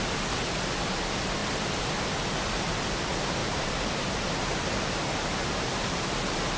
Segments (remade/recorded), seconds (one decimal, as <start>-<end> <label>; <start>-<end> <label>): 0.0-1.4 recorded; 1.4-1.9 remade; 1.9-3.4 recorded; 3.4-6.0 remade; 6.0-6.6 recorded